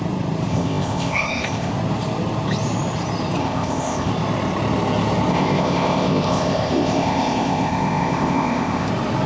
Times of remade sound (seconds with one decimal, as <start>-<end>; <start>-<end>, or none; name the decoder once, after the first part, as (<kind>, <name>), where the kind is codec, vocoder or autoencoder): 0.5-1.7 (codec, ZipCodec); 3.4-4.1; 5.3-8.9

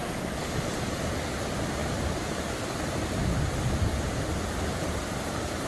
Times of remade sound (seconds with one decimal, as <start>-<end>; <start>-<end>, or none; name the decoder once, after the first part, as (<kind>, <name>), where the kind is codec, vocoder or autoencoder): none

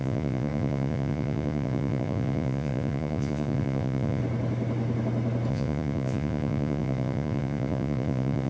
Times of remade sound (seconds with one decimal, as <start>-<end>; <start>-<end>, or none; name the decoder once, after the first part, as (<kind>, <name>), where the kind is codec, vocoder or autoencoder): 0.0-4.2 (vocoder, Vocos); 5.5-8.5

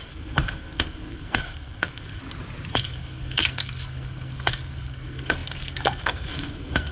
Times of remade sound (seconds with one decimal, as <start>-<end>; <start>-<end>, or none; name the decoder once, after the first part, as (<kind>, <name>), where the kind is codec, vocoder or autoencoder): 0.0-2.2 (codec, SNAC); 2.7-6.9

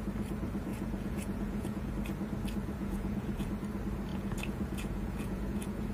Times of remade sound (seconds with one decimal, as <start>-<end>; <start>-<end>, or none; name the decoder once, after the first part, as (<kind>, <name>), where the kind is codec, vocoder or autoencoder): 0.7-1.9 (vocoder, Vocos); 2.8-3.5; 4.1-5.9

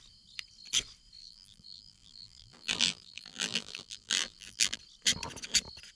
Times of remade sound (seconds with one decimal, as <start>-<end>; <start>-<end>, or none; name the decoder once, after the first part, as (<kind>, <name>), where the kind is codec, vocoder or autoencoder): 1.2-4.8 (vocoder, BigVGAN v2)

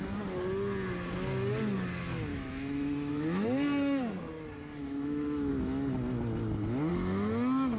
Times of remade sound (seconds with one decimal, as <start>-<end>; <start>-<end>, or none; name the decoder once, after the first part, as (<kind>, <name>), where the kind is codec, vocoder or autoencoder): 2.3-3.1 (autoencoder, DAC-VAE); 4.8-5.5

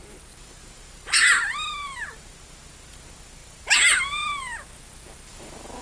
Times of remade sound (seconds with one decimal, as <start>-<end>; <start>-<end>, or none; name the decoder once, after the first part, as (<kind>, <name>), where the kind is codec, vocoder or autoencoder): none